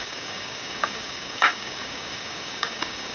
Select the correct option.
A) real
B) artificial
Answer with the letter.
B